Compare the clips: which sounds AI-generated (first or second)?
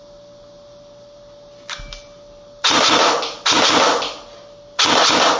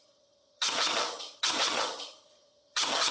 second